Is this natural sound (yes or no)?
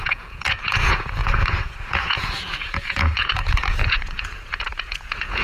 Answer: no